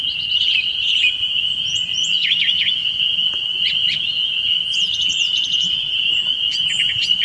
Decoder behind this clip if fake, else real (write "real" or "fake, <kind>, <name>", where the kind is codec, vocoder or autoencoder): real